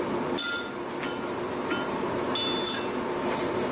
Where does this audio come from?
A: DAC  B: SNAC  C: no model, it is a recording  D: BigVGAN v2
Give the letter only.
C